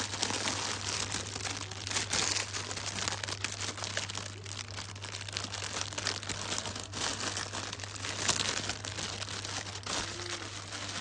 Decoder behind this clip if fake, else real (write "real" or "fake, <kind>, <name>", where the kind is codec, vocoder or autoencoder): real